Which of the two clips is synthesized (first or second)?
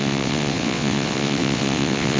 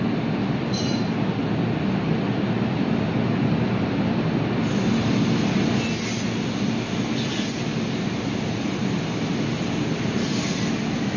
first